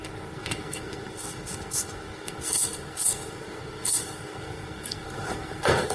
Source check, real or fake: fake